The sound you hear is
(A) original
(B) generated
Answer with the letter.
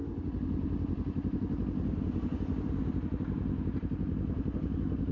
A